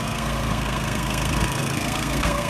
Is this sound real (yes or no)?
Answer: no